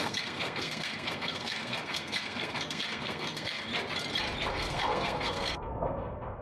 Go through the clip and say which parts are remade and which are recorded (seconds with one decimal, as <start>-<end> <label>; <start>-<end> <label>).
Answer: 0.0-3.7 remade; 3.7-4.5 recorded; 4.5-6.4 remade